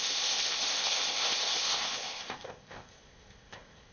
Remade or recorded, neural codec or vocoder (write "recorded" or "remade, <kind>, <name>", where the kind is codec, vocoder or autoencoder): remade, codec, ZipCodec